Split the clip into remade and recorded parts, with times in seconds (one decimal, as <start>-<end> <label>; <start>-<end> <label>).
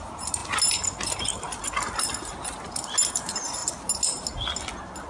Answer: 0.0-5.1 recorded